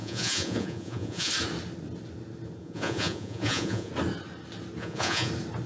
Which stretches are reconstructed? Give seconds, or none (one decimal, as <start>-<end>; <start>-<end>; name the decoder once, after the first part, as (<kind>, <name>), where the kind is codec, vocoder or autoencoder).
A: 0.0-1.3 (vocoder, Vocos); 2.6-3.9; 4.8-5.3